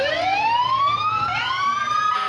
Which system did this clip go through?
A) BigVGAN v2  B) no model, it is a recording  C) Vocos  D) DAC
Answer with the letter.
A